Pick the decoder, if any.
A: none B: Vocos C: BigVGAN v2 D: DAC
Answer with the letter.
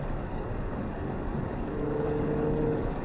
D